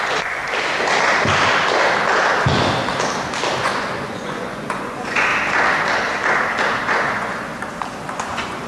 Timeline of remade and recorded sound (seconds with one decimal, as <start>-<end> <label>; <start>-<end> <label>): 0.0-0.4 remade; 0.4-3.6 recorded; 3.6-5.3 remade; 5.3-6.8 recorded; 6.8-7.5 remade; 7.5-8.1 recorded; 8.1-8.7 remade